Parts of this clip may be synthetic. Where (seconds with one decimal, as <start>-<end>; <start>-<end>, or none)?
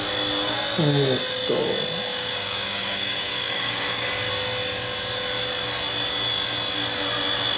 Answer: 2.1-4.1